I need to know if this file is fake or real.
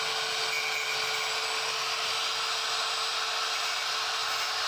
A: real